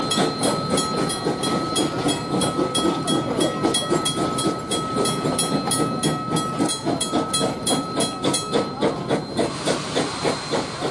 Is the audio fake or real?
real